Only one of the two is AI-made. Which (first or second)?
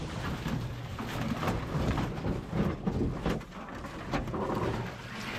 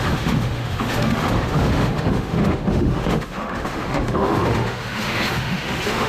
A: second